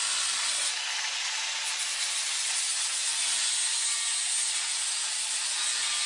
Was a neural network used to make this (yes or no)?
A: no